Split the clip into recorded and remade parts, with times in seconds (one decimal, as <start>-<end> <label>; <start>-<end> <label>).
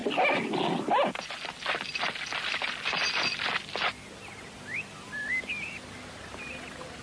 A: 0.0-7.0 recorded